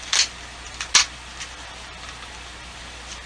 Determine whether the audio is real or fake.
real